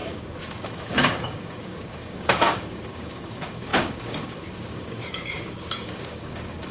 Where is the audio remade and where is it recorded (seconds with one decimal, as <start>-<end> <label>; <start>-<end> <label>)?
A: 0.0-6.7 remade